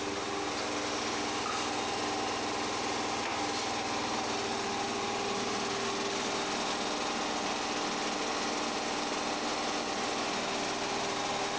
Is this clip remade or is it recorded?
recorded